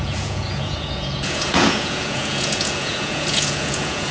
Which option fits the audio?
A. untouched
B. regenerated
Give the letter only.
B